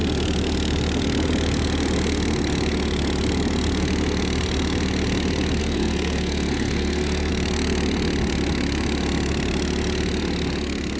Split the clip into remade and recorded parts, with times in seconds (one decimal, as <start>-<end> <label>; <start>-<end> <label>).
0.0-5.6 recorded; 5.6-7.3 remade; 7.3-11.0 recorded